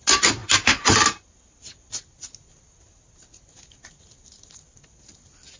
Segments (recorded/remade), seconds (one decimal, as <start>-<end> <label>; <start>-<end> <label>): 0.0-5.6 recorded